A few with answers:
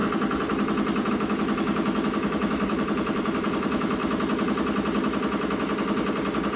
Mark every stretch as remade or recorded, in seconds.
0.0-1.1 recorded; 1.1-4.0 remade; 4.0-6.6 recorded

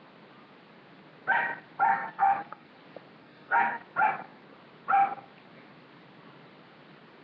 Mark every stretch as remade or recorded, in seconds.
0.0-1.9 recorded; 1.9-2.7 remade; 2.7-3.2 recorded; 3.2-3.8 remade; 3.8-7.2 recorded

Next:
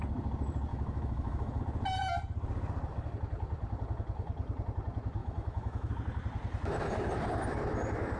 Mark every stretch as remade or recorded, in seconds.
0.0-0.7 recorded; 0.7-1.6 remade; 1.6-5.2 recorded; 5.2-5.9 remade; 5.9-8.2 recorded